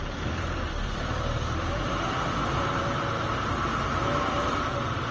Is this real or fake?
fake